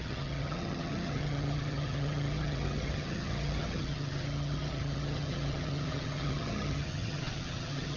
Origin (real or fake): fake